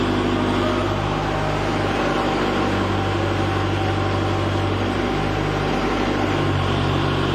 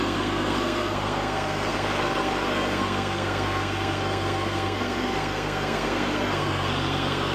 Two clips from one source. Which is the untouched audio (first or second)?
first